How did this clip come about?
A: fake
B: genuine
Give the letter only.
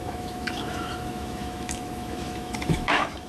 A